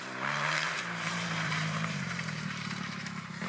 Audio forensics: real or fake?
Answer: fake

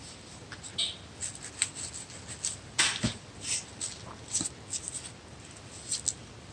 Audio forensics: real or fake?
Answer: real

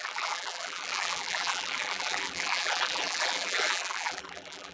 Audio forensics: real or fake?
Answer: fake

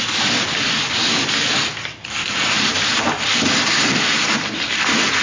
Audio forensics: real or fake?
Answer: fake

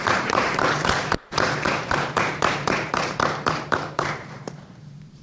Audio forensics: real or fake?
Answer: fake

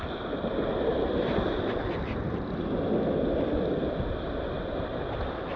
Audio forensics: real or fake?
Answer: real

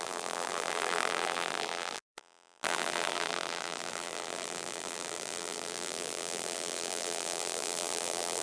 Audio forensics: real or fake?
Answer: fake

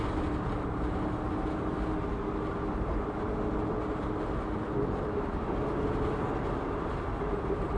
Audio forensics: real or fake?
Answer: real